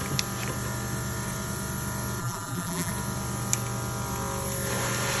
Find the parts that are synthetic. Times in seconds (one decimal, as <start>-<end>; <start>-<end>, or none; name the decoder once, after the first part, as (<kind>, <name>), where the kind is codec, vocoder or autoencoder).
2.2-2.9 (vocoder, BigVGAN v2)